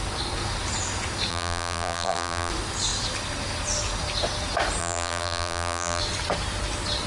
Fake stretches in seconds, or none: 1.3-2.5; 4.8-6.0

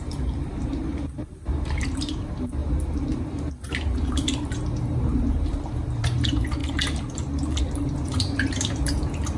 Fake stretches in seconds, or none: 0.0-0.5; 1.3-2.6; 3.6-6.6; 7.6-9.4